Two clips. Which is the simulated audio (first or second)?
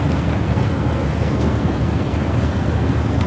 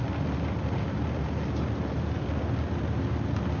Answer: first